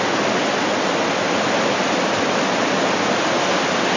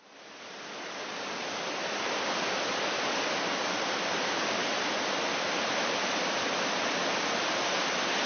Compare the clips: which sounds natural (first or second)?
first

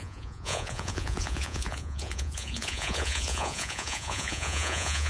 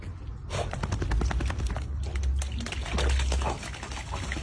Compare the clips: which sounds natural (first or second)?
second